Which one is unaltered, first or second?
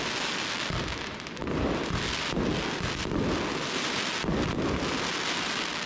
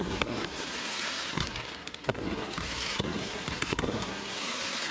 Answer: first